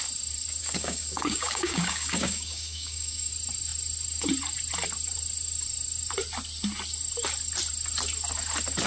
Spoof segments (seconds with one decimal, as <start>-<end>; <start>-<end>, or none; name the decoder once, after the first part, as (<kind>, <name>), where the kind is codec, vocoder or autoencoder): 0.6-3.3 (codec, DAC)